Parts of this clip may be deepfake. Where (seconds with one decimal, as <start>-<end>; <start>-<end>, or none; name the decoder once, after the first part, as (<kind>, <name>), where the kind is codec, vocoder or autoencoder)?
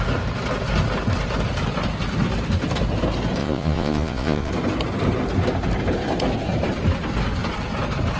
3.4-4.5 (vocoder, Vocos)